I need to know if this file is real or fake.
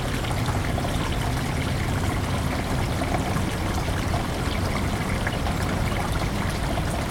real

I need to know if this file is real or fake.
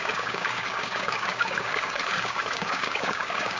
fake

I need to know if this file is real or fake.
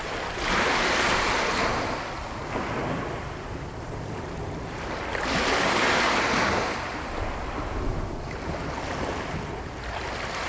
real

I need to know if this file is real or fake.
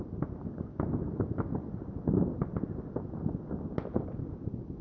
real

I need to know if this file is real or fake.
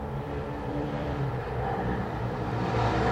fake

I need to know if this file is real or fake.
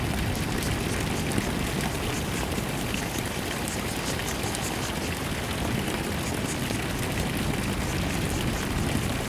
real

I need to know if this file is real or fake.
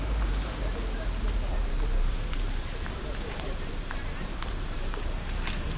fake